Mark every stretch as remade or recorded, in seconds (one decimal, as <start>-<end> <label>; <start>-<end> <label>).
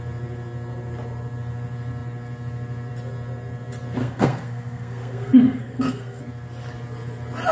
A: 0.0-4.0 recorded; 4.0-6.2 remade; 6.2-7.5 recorded